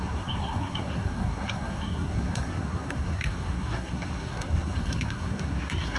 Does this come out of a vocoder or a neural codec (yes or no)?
yes